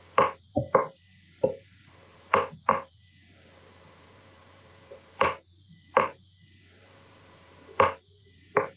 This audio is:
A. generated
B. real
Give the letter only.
A